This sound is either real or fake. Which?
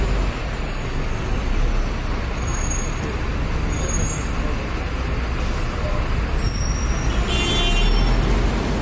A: real